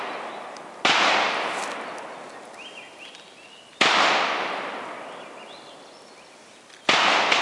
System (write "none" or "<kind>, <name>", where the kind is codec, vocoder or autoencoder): none